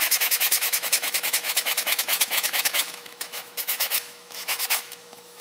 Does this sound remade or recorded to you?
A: remade